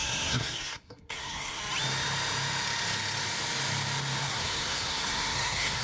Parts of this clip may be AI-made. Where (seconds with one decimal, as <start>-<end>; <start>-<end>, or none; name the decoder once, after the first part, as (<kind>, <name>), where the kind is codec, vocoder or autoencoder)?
0.0-1.6 (codec, SNAC); 4.2-5.8